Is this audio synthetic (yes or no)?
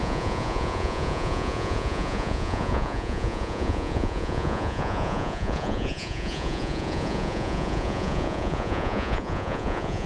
yes